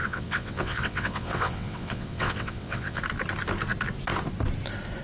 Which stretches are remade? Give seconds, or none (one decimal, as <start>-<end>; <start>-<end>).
0.0-3.0